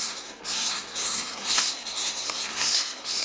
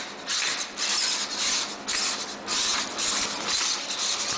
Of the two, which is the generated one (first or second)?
first